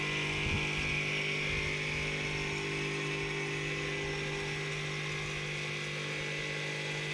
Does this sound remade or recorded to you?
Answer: recorded